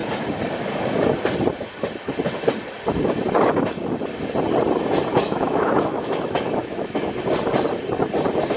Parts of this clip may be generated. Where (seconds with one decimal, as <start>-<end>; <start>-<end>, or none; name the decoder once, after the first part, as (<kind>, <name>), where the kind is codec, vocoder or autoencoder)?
5.1-7.1 (autoencoder, DAC-VAE)